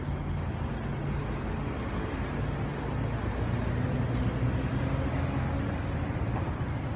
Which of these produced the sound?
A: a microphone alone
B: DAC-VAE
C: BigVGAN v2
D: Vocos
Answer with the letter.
A